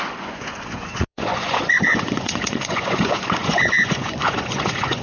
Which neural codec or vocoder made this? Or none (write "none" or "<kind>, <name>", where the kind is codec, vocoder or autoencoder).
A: vocoder, Vocos